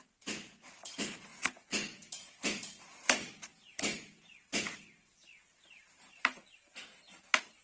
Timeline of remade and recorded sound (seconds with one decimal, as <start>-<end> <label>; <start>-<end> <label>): 0.0-1.3 recorded; 1.3-2.6 remade; 2.6-7.6 recorded